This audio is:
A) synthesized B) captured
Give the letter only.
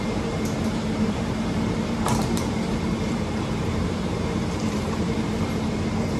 A